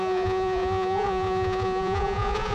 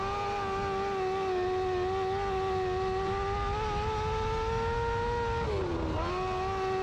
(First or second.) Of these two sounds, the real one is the second